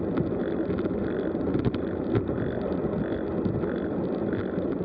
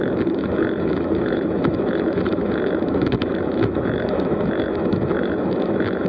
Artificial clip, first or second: second